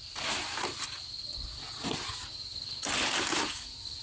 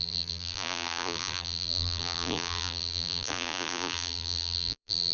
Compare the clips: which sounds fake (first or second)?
second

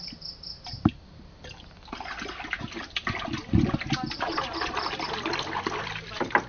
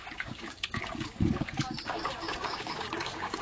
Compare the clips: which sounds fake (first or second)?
second